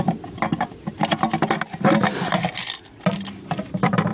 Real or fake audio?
real